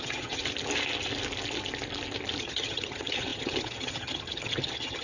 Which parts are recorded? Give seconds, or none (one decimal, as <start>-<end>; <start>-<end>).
0.4-2.4